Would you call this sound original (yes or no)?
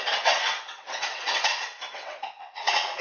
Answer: no